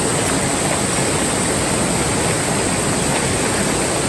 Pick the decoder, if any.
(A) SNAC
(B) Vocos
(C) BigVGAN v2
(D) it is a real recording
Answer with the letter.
D